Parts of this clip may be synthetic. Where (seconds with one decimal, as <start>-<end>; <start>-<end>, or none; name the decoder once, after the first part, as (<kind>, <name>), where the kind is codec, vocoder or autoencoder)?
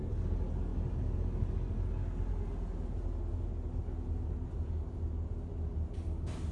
none